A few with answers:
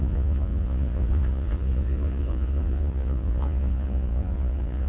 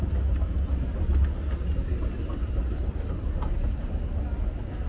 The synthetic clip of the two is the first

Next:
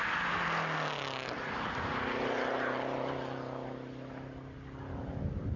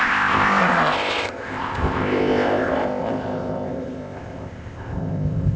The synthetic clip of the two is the second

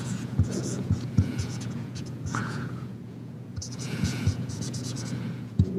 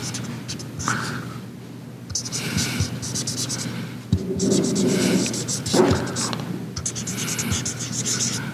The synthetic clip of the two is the first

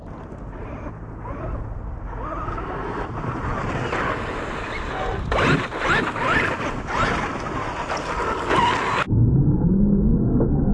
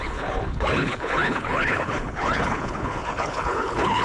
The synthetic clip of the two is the second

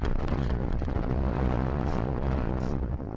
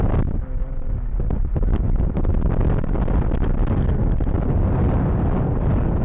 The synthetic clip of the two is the first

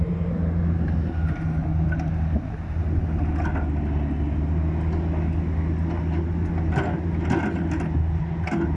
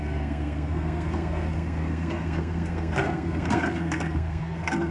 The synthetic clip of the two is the second